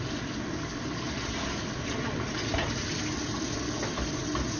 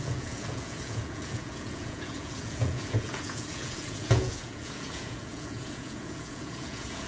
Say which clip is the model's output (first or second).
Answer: second